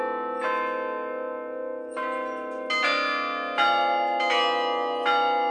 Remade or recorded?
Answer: recorded